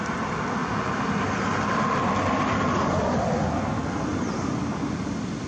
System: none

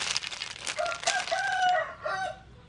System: none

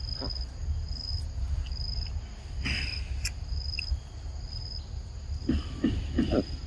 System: none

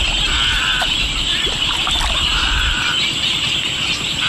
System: none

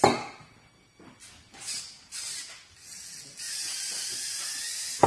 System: none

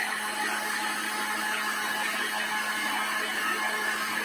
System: none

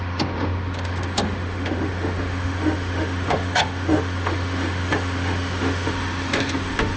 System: autoencoder, DAC-VAE